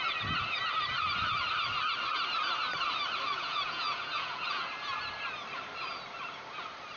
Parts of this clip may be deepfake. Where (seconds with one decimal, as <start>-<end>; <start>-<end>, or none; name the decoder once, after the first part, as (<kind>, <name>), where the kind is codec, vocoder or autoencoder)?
3.3-4.7 (vocoder, Vocos)